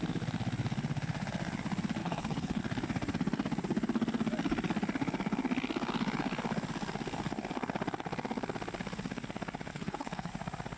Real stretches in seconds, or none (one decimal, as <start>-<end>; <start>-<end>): 0.0-2.0; 2.6-9.7; 10.3-10.8